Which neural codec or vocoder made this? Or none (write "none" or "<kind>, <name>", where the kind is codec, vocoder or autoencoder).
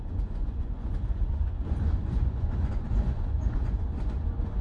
vocoder, Vocos